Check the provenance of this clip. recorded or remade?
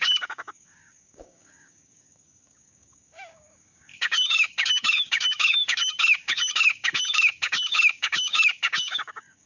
remade